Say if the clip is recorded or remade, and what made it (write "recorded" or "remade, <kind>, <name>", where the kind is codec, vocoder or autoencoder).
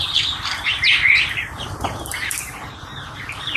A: remade, vocoder, BigVGAN v2